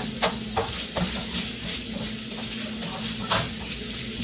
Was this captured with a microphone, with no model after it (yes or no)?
yes